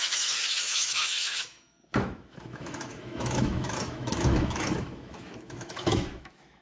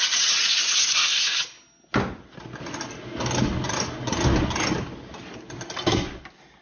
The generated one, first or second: first